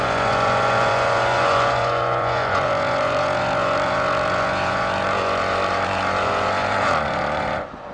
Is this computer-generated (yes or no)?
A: yes